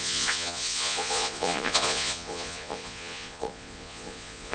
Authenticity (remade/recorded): remade